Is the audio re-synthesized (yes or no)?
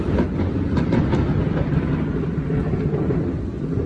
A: yes